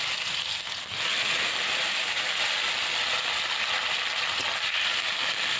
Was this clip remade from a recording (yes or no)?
no